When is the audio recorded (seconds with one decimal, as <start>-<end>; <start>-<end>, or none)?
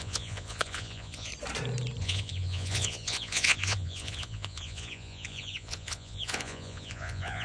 1.3-2.0